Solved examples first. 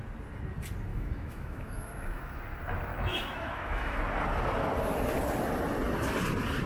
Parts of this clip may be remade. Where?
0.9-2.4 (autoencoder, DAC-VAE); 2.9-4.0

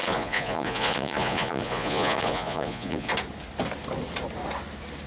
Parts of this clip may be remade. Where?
0.0-3.1 (vocoder, Vocos)

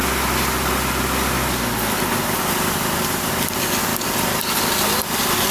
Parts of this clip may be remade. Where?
none

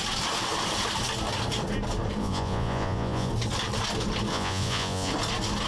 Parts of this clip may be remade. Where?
2.2-3.3 (vocoder, Vocos); 4.3-5.1

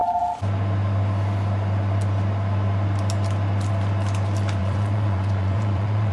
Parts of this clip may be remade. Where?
4.6-6.1 (vocoder, Vocos)

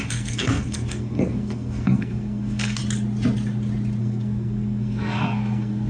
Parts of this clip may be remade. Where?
0.0-2.8 (codec, SNAC); 4.0-5.9

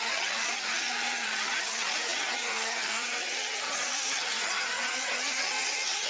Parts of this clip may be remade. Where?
0.0-6.1 (vocoder, HiFi-GAN)